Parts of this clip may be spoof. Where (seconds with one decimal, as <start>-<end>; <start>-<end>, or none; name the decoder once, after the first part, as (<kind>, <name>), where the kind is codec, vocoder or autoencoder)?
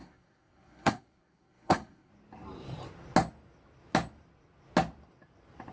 0.0-2.1 (codec, SNAC)